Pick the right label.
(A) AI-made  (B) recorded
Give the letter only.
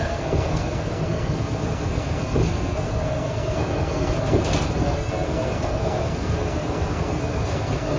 A